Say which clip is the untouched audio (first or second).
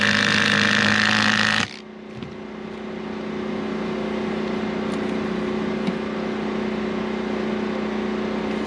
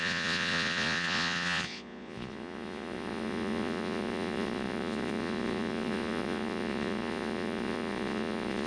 first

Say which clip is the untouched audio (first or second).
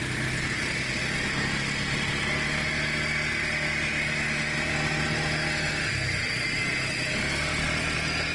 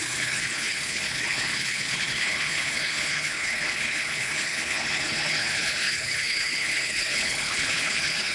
first